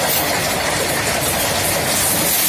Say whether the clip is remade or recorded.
recorded